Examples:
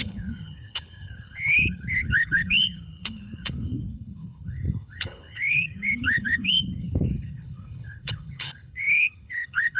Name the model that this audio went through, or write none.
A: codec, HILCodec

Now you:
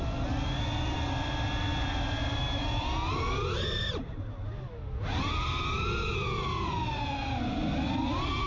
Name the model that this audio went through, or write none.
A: none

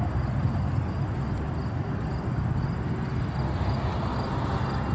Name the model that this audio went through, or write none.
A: none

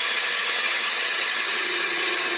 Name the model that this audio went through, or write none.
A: vocoder, HiFi-GAN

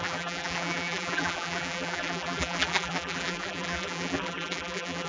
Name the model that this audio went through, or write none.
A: vocoder, BigVGAN v2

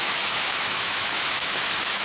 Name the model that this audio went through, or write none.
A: autoencoder, DAC-VAE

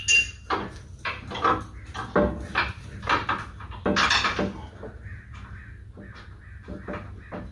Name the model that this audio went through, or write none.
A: none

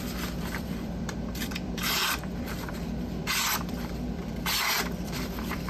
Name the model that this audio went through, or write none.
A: vocoder, BigVGAN v2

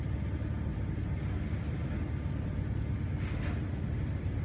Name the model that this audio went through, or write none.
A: none